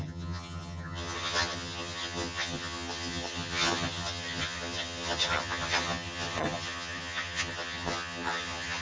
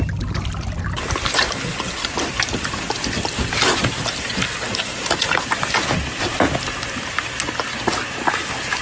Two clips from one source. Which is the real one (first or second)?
second